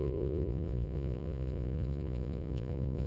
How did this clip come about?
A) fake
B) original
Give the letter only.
A